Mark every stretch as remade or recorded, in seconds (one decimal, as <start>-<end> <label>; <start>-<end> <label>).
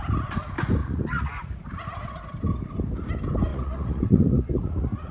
0.0-0.8 recorded; 0.8-1.5 remade; 1.5-3.5 recorded; 3.5-5.1 remade